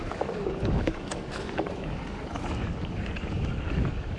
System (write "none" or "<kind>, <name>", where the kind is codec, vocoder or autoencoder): codec, DAC